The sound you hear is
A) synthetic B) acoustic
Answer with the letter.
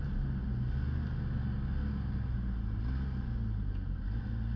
B